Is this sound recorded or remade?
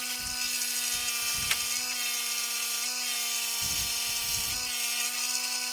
recorded